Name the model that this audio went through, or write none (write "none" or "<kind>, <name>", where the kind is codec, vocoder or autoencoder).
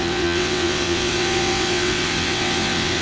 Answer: vocoder, WaveNeXt